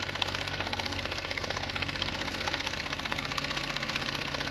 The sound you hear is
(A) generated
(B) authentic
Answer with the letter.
A